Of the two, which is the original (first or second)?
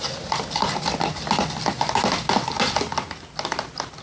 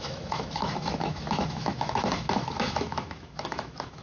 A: first